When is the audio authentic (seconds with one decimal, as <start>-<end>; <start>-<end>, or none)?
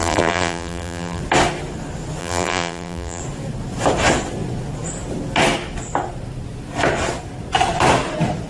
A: 1.2-2.2; 3.2-8.5